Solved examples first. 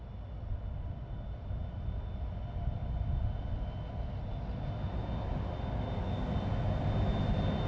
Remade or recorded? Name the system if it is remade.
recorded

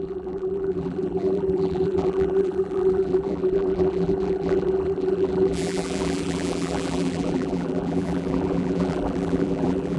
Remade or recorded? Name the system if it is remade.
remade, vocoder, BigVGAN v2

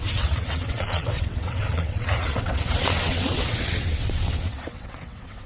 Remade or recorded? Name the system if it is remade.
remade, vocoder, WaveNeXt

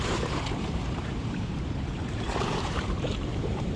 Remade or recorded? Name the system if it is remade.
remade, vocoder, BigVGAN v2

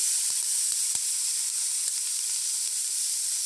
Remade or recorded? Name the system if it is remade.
remade, vocoder, BigVGAN v2